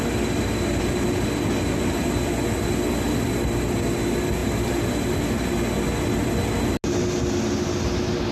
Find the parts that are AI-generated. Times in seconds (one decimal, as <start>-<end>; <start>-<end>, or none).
none